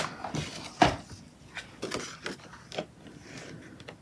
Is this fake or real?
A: real